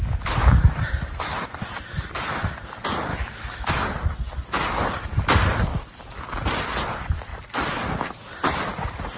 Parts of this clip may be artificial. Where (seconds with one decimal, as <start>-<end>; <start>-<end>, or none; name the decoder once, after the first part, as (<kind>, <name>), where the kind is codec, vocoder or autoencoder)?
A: 3.1-3.7 (autoencoder, DAC-VAE)